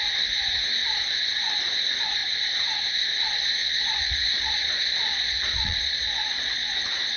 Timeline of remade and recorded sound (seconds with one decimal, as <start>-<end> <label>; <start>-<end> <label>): 0.0-3.6 recorded; 3.6-6.8 remade; 6.8-7.2 recorded